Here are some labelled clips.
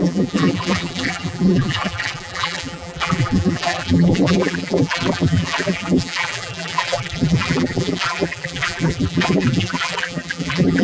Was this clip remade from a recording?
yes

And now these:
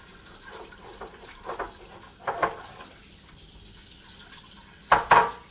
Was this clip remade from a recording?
no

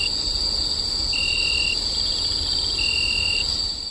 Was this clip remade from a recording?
no